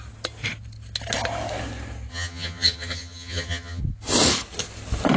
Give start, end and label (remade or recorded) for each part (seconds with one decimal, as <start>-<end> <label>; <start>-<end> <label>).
0.0-2.1 recorded; 2.1-3.8 remade; 3.8-5.2 recorded